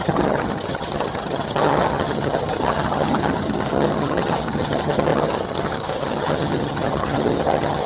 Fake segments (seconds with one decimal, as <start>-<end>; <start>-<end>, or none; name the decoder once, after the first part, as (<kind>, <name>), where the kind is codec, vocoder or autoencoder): 0.0-7.9 (vocoder, HiFi-GAN)